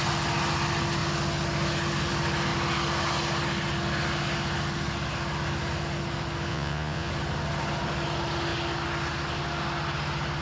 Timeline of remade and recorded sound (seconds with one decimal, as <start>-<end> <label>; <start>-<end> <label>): 0.0-6.5 recorded; 6.5-7.1 remade; 7.1-10.4 recorded